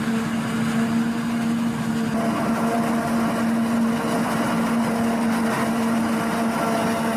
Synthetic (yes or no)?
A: no